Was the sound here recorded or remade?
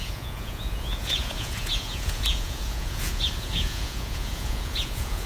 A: remade